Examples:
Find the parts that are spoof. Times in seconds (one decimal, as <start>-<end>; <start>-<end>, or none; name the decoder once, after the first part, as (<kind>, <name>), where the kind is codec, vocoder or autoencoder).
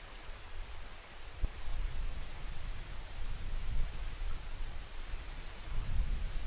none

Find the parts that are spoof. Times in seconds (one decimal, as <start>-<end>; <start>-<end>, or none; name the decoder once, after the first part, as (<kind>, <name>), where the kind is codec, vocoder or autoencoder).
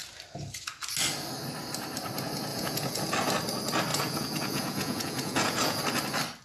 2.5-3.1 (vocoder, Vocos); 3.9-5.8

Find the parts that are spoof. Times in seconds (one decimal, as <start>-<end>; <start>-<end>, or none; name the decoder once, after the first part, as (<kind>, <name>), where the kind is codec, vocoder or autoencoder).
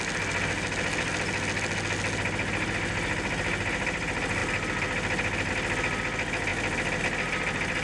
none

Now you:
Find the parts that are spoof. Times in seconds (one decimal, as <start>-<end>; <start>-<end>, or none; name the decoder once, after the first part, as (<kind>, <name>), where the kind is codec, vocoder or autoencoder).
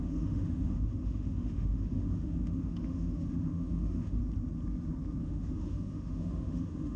0.0-4.2 (autoencoder, DAC-VAE); 5.2-7.0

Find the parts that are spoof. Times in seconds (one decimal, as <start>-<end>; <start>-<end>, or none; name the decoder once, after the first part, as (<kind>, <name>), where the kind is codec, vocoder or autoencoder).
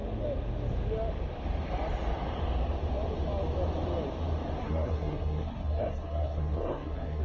4.6-7.2 (codec, SNAC)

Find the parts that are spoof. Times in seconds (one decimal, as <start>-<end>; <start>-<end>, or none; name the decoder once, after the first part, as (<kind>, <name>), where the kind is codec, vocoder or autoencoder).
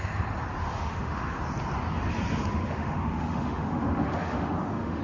0.6-1.4 (autoencoder, DAC-VAE); 2.5-5.0